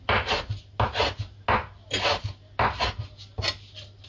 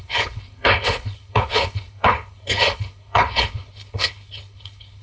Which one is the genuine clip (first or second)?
first